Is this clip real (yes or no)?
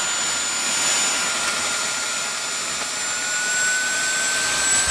yes